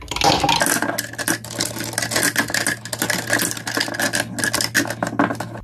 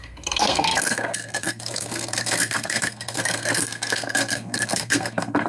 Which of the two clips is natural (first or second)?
first